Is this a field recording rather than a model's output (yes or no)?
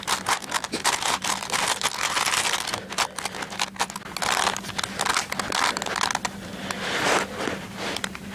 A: yes